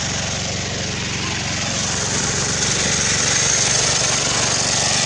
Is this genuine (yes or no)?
yes